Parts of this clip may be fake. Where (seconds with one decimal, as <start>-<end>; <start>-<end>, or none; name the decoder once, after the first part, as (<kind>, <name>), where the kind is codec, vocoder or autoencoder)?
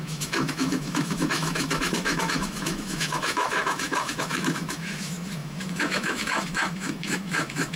0.0-7.8 (autoencoder, DAC-VAE)